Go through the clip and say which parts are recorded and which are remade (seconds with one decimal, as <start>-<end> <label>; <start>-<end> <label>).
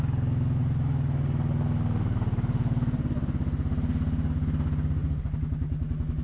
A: 0.0-6.2 recorded